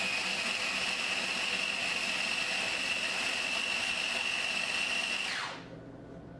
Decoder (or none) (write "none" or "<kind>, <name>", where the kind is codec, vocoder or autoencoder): none